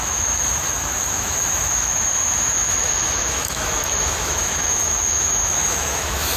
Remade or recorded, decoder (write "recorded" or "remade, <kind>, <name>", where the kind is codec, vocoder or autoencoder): remade, autoencoder, DAC-VAE